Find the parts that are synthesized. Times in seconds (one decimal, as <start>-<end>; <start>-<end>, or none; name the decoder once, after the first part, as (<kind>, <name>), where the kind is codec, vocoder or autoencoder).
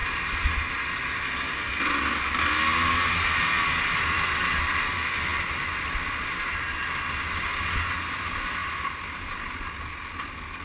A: none